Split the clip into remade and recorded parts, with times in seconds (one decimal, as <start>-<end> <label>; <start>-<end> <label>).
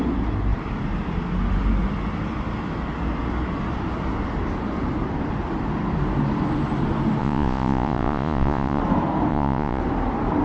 0.0-7.2 recorded; 7.2-8.8 remade; 8.8-9.3 recorded; 9.3-9.8 remade; 9.8-10.4 recorded